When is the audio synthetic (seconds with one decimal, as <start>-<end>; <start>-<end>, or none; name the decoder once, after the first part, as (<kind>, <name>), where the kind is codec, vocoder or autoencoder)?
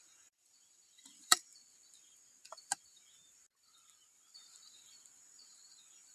0.0-1.5 (vocoder, BigVGAN v2); 5.2-6.1